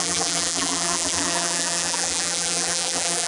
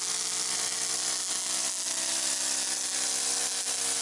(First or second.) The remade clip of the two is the first